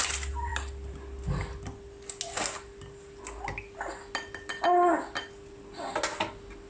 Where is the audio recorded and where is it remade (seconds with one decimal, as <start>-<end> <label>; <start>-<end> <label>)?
0.0-6.7 recorded